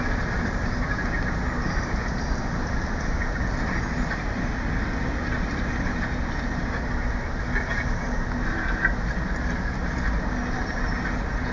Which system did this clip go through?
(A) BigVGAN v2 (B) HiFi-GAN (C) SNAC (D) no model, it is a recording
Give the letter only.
D